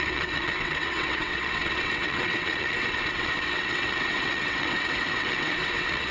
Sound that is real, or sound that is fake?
fake